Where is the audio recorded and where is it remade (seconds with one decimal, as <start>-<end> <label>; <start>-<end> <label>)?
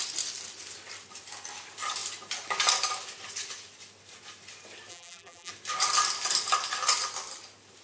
0.0-4.9 recorded; 4.9-5.5 remade; 5.5-7.8 recorded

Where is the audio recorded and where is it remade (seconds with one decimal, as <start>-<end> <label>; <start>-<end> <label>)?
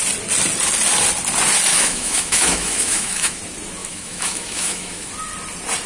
0.0-1.7 recorded; 1.7-3.4 remade; 3.4-3.8 recorded; 3.8-5.1 remade; 5.1-5.9 recorded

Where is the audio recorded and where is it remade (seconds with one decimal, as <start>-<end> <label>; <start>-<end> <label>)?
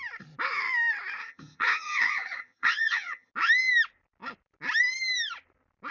0.0-1.2 recorded; 1.2-3.3 remade; 3.3-5.9 recorded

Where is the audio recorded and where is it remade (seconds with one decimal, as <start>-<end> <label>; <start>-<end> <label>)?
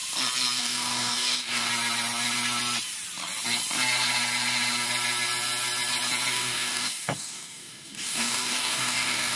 0.0-0.6 recorded; 0.6-1.7 remade; 1.7-6.3 recorded; 6.3-9.4 remade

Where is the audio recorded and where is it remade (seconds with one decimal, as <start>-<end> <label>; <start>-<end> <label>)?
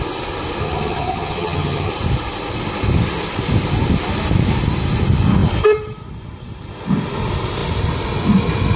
0.0-0.6 recorded; 0.6-1.9 remade; 1.9-8.8 recorded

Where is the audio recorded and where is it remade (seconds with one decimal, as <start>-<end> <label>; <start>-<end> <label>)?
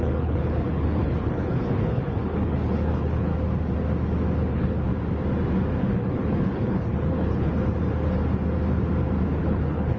0.0-3.3 remade; 3.3-4.5 recorded; 4.5-4.9 remade; 4.9-5.8 recorded; 5.8-7.5 remade; 7.5-9.4 recorded; 9.4-10.0 remade